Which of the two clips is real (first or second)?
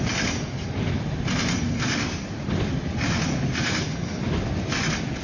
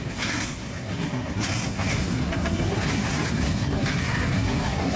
first